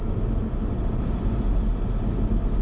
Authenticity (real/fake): real